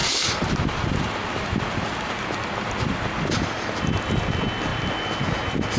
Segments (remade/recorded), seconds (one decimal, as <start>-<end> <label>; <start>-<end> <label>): 0.0-3.5 remade; 3.5-5.8 recorded